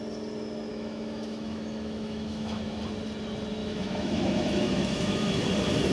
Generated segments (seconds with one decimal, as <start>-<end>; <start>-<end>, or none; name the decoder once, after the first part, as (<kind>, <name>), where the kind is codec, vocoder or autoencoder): 0.7-2.8 (autoencoder, DAC-VAE); 3.6-5.4